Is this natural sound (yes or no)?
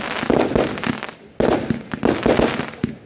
yes